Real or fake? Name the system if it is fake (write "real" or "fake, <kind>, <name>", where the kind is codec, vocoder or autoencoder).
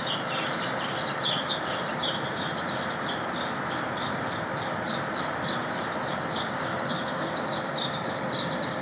real